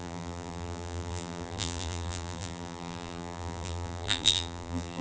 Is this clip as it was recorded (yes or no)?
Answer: no